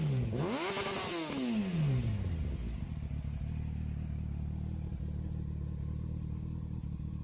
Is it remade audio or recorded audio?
recorded